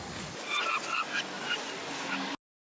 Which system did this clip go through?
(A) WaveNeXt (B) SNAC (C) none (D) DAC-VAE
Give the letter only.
C